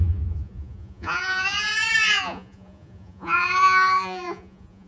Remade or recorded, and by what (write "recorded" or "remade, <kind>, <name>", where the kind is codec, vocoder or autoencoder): remade, vocoder, Vocos